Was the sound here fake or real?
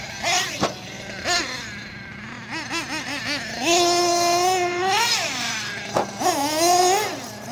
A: real